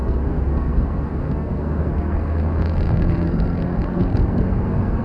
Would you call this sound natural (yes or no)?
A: no